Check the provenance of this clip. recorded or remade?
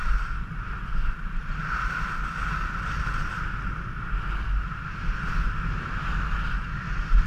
recorded